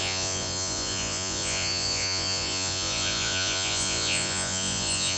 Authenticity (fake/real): fake